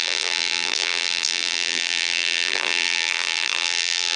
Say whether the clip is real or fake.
fake